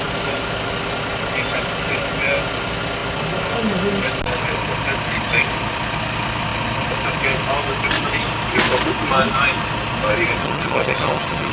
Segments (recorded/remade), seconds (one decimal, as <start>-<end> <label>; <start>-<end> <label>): 0.0-10.4 recorded; 10.4-11.5 remade